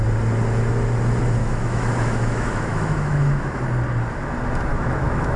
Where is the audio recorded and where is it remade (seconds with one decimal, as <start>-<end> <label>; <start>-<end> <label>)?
0.0-1.4 recorded; 1.4-3.6 remade; 3.6-4.7 recorded; 4.7-5.4 remade